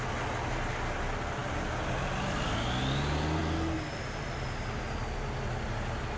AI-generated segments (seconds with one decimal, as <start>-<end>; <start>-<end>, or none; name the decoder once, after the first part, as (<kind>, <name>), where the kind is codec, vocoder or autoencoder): none